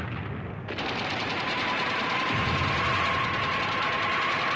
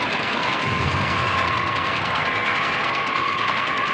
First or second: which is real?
first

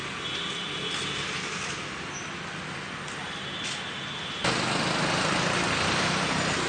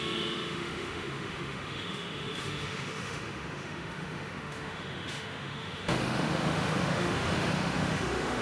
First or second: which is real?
first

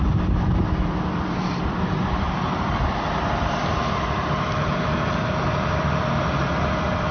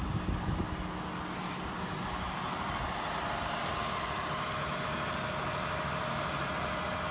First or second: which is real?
second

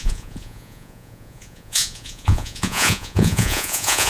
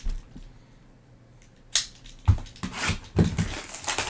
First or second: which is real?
second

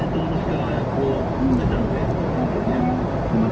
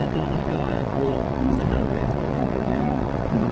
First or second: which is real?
first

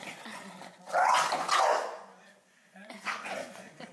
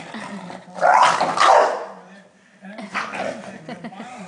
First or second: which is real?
second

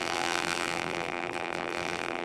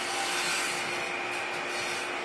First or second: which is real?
second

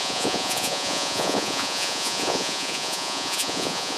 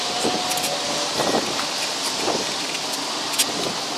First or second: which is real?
second